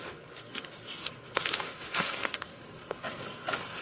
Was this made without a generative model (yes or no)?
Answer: no